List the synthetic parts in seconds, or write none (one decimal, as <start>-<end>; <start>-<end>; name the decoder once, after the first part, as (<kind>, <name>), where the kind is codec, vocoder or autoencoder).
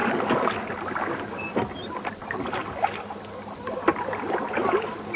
none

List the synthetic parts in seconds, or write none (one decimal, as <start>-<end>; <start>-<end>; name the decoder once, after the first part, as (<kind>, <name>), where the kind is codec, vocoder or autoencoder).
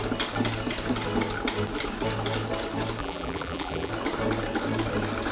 3.0-3.9 (vocoder, BigVGAN v2)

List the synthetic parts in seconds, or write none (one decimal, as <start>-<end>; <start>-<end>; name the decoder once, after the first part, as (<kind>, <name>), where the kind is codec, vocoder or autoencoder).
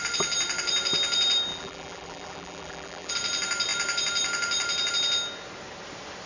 1.5-3.1 (vocoder, BigVGAN v2)